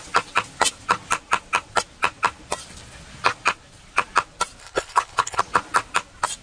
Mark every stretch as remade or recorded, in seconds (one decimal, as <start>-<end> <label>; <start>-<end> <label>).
0.0-4.6 recorded; 4.6-5.4 remade; 5.4-6.4 recorded